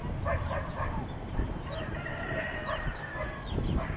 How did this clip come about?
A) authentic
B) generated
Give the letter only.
B